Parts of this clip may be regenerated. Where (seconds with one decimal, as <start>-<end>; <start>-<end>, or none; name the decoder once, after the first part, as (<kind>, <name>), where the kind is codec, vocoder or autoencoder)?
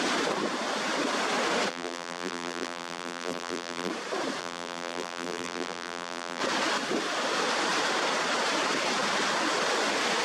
1.7-3.9 (vocoder, BigVGAN v2); 4.4-6.4